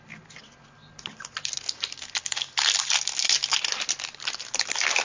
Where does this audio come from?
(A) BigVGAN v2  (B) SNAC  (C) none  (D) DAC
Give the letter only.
C